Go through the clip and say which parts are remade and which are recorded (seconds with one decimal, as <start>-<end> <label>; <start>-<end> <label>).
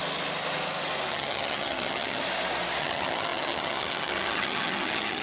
0.0-1.1 recorded; 1.1-2.2 remade; 2.2-2.8 recorded; 2.8-5.2 remade